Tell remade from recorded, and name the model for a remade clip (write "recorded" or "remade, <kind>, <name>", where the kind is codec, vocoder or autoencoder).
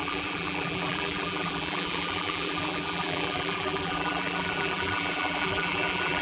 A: remade, vocoder, BigVGAN v2